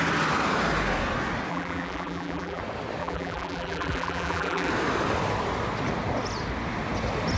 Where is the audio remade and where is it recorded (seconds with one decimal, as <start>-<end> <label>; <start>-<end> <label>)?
0.0-1.5 recorded; 1.5-2.6 remade; 2.6-3.0 recorded; 3.0-4.7 remade; 4.7-7.4 recorded